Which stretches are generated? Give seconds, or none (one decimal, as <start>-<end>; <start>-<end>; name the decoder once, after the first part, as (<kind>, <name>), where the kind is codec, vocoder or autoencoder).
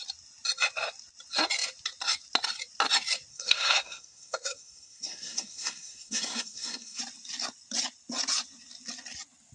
3.3-7.0 (codec, SNAC)